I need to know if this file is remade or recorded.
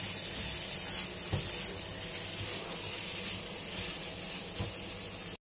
recorded